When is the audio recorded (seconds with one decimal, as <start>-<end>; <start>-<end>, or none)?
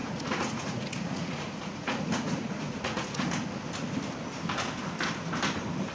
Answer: 3.3-5.9